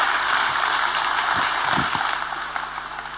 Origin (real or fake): real